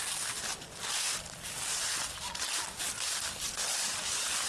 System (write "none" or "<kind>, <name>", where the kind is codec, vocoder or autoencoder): none